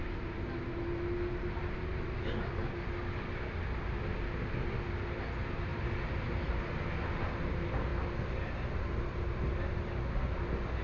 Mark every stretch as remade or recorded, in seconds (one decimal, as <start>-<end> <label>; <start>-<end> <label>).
0.0-10.8 recorded